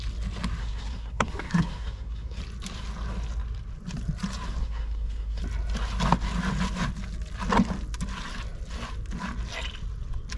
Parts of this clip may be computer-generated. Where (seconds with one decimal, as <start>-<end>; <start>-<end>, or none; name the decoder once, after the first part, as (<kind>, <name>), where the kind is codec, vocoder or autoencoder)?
0.6-2.4 (codec, SNAC); 4.6-5.4

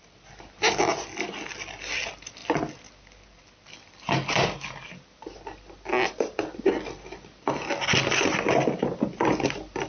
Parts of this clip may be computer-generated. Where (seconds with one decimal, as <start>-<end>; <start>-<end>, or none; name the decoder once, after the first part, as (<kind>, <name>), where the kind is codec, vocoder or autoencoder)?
none